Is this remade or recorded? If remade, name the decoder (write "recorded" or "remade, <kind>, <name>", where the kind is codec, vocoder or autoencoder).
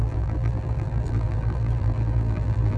remade, vocoder, BigVGAN v2